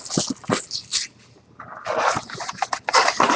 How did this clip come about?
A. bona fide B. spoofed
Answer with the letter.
A